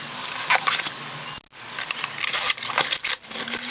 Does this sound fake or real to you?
real